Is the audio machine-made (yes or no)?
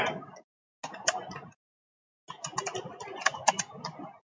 no